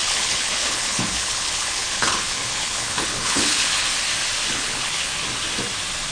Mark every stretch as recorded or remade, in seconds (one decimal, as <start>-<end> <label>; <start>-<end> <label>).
0.0-3.7 remade; 3.7-4.5 recorded; 4.5-5.1 remade; 5.1-6.1 recorded